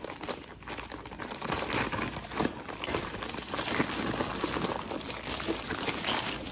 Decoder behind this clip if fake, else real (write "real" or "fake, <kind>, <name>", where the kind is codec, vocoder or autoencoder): fake, vocoder, BigVGAN v2